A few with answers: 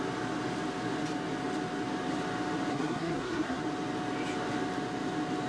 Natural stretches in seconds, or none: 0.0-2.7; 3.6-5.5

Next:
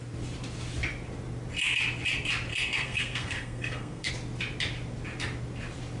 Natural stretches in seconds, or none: 0.0-2.5; 4.1-6.0

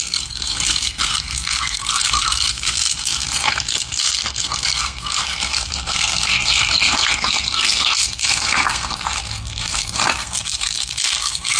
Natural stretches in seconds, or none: none

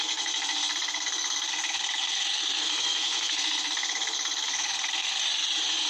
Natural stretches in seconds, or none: 5.2-5.9

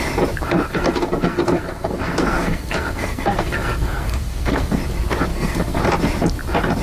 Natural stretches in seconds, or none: 0.0-0.7; 4.8-5.3; 5.8-6.8

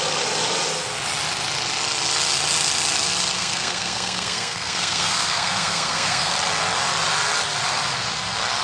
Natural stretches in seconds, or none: 0.0-3.4; 6.3-8.6